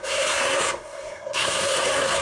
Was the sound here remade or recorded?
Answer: remade